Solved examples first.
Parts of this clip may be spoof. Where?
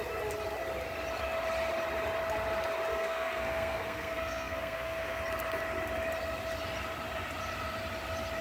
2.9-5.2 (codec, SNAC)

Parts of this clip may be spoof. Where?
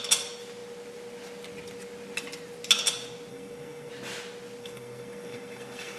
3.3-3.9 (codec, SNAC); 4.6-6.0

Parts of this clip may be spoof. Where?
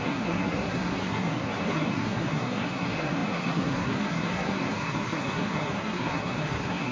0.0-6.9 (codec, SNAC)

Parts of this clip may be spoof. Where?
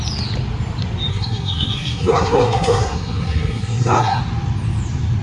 1.1-4.2 (codec, SNAC)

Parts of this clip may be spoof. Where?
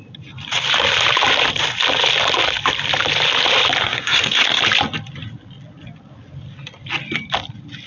3.8-4.6 (codec, SNAC)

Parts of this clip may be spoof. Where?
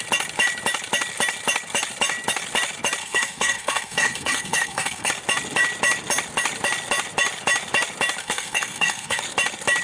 3.0-5.1 (codec, SNAC); 8.2-9.2